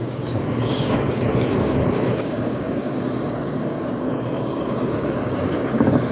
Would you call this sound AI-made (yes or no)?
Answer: yes